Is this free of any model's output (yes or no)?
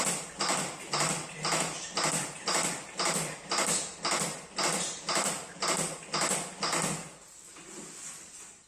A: yes